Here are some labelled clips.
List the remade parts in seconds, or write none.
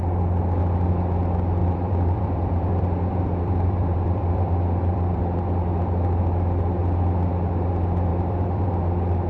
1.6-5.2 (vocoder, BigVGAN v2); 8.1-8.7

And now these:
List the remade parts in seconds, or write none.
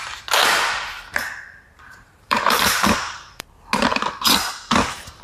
0.4-3.5 (vocoder, BigVGAN v2)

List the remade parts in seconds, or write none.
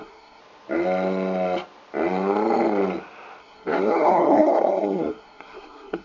0.0-0.4 (codec, SNAC); 3.4-6.0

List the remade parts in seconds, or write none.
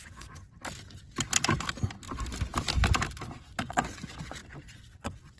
0.0-0.4 (vocoder, Vocos); 3.6-4.4; 5.0-5.4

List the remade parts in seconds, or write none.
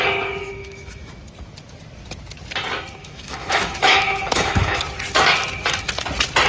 0.4-1.1 (autoencoder, DAC-VAE); 3.0-4.8